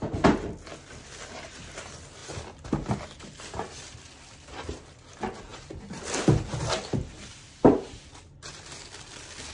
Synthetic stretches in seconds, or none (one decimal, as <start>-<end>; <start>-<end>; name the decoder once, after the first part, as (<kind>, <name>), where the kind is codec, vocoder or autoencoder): none